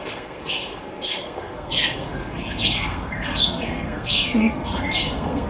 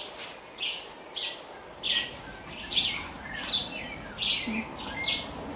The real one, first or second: second